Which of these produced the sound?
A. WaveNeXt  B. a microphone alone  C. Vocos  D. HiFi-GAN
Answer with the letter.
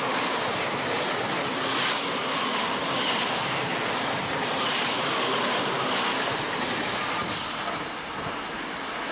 B